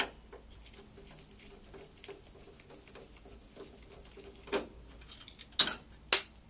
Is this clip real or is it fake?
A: real